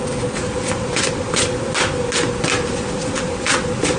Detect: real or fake real